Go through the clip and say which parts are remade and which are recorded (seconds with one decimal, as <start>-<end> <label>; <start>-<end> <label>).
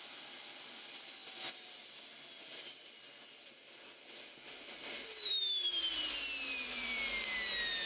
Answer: 0.0-7.9 recorded